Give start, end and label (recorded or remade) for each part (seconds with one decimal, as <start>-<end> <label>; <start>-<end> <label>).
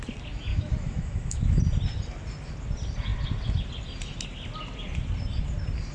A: 0.0-0.5 recorded; 0.5-1.6 remade; 1.6-5.9 recorded